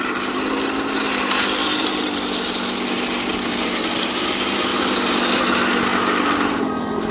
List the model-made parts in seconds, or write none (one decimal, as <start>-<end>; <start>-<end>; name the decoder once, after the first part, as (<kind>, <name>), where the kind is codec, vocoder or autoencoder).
1.6-4.2 (vocoder, BigVGAN v2); 4.7-5.4; 5.9-7.1